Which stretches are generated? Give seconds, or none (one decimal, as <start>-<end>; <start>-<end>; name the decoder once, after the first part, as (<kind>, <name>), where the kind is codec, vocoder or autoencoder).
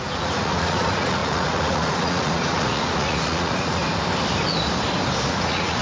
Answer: 0.0-3.8 (vocoder, Vocos); 5.3-5.8